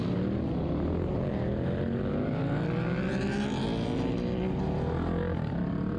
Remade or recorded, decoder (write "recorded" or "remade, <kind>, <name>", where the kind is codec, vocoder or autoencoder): recorded